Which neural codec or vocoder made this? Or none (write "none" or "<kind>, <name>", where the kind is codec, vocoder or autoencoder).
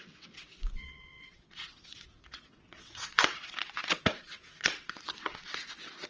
vocoder, WaveNeXt